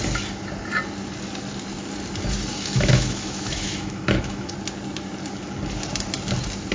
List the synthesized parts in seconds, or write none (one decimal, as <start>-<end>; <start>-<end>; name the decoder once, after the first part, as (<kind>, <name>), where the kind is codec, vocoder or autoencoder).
2.5-4.5 (autoencoder, DAC-VAE)